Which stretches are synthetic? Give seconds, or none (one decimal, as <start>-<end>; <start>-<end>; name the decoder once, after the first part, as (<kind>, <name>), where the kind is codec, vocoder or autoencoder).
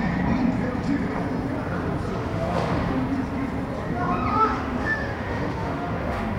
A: 2.2-3.0 (autoencoder, DAC-VAE); 4.3-6.4